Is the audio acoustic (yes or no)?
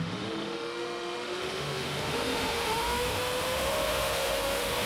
no